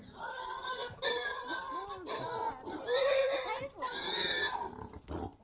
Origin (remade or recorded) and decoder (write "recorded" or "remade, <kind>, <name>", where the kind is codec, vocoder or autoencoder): recorded